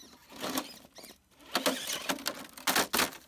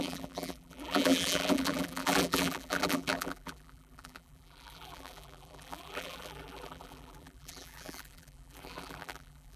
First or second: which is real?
first